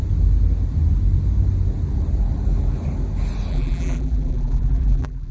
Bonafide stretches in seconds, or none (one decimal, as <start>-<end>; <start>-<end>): 0.0-3.5